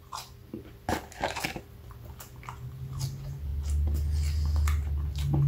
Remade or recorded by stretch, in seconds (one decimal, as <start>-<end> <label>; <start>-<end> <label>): 0.0-5.5 recorded